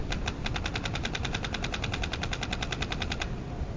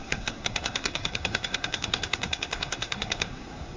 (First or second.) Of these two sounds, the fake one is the second